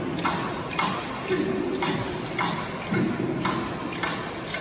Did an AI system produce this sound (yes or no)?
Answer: no